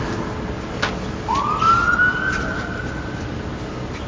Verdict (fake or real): real